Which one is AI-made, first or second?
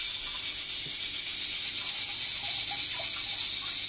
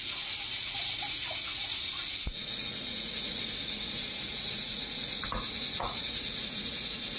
second